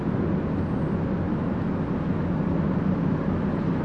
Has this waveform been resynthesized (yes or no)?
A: no